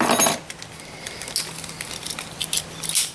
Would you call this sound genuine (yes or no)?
yes